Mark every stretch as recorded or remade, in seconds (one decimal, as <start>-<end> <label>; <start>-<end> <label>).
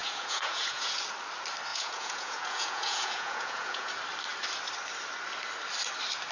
0.0-1.0 remade; 1.0-1.7 recorded; 1.7-3.9 remade; 3.9-6.3 recorded